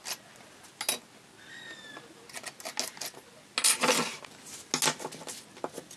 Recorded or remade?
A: recorded